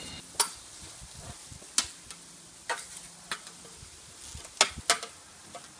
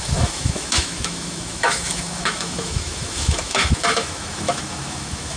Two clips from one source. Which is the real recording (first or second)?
first